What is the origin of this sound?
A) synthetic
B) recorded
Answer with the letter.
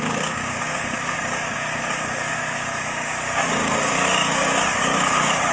A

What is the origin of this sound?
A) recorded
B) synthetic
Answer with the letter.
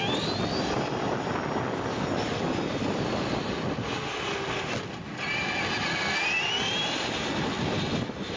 A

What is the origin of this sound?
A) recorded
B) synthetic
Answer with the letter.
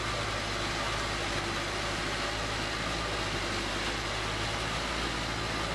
A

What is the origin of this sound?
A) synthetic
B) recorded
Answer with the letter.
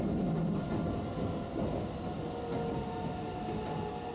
B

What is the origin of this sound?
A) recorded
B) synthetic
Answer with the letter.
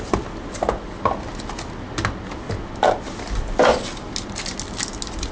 A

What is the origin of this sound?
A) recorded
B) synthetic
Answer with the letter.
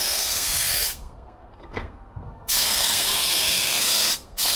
B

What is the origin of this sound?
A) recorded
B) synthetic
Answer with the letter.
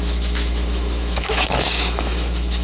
B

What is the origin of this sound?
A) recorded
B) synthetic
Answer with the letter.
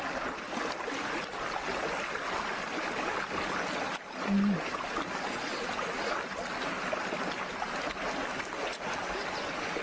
A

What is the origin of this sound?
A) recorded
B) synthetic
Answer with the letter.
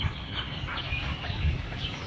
B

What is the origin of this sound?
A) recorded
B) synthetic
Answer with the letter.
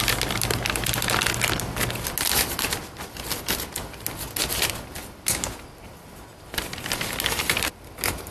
A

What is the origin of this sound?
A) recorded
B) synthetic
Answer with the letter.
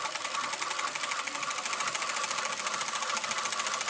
A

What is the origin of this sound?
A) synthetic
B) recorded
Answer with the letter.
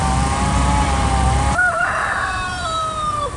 A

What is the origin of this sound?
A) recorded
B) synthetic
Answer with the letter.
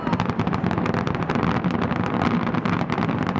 A